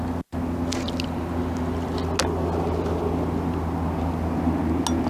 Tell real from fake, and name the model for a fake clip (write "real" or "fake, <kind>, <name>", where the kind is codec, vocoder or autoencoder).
real